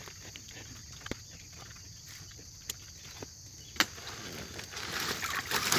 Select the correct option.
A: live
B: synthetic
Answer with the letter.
A